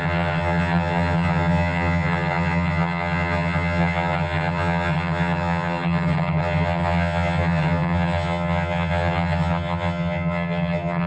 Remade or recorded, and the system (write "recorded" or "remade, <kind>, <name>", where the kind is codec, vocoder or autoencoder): remade, vocoder, HiFi-GAN